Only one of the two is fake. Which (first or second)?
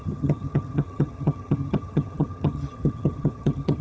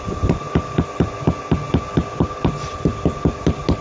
first